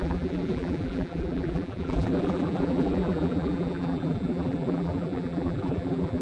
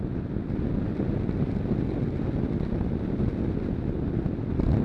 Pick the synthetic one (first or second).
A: first